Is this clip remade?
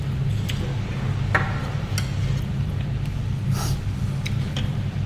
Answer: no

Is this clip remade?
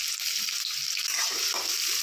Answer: no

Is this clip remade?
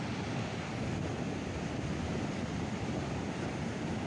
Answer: no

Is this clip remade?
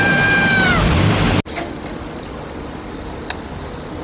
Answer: no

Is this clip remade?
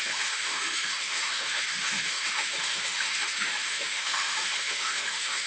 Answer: yes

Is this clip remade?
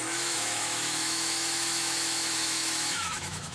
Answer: yes